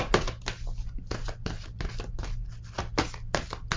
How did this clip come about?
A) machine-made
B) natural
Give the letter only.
B